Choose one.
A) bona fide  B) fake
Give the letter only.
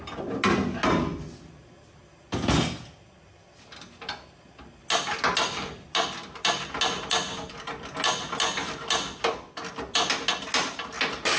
A